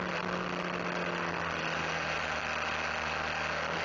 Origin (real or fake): real